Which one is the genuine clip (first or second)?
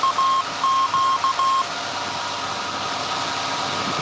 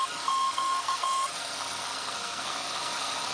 first